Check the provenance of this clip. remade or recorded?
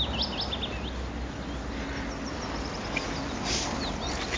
recorded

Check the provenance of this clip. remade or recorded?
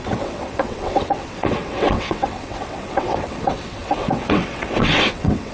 remade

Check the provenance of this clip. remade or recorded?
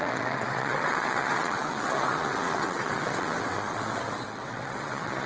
remade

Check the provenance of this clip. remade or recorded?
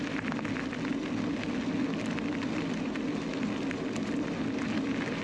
recorded